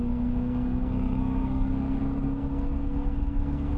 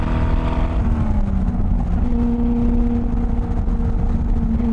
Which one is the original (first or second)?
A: second